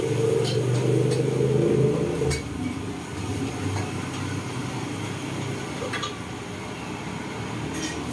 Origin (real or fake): real